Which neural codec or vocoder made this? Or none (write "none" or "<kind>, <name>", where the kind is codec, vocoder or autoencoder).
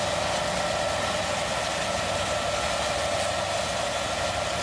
none